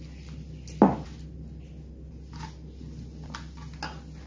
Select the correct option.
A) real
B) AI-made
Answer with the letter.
A